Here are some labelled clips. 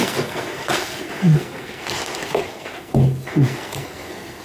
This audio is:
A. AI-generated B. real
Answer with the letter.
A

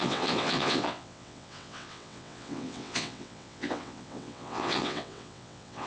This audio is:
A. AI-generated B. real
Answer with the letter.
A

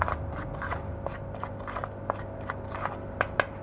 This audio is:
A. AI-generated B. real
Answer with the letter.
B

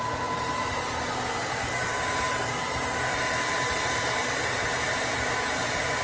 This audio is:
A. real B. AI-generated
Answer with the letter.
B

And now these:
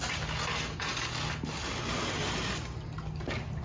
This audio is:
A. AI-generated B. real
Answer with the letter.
B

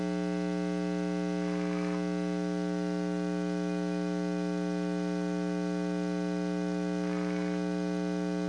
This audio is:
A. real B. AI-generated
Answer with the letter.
A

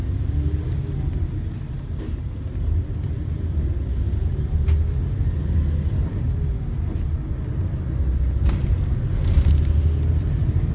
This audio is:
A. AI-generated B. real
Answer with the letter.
B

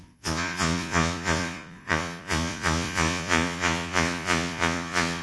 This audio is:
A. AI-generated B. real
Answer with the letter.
A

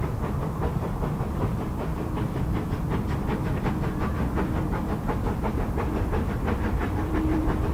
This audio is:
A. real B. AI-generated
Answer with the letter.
B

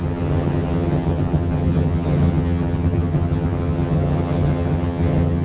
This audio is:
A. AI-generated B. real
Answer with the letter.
A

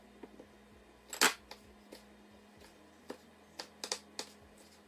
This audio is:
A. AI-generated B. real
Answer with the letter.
B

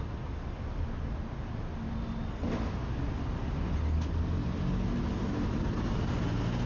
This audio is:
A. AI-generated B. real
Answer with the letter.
B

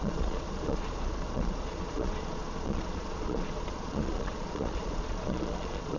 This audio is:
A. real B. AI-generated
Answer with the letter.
B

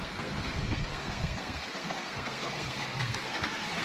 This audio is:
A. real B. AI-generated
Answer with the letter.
B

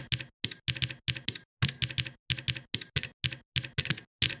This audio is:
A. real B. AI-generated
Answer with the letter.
A